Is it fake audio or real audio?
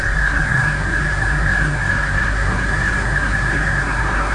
fake